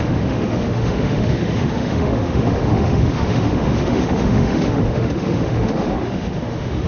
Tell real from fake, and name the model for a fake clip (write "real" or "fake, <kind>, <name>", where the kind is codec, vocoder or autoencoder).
fake, autoencoder, DAC-VAE